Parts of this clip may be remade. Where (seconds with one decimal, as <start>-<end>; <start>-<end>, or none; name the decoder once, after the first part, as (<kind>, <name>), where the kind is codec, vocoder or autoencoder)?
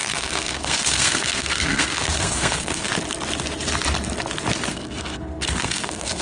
0.0-2.9 (codec, SNAC); 4.7-6.2